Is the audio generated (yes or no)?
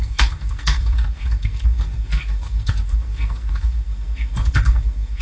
yes